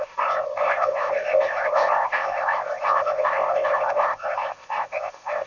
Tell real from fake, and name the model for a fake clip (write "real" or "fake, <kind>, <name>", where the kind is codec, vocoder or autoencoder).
fake, codec, ZipCodec